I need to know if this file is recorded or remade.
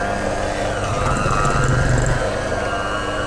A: recorded